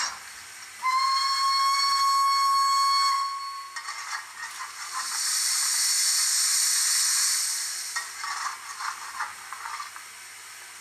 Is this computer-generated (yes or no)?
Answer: no